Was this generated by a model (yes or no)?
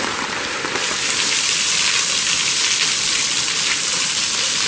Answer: no